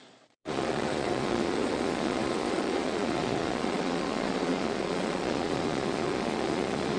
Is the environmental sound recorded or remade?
remade